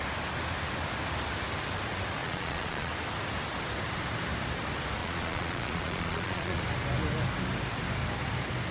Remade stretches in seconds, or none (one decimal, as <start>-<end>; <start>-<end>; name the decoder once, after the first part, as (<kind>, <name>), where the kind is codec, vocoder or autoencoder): 2.2-2.9 (vocoder, Vocos); 5.0-6.6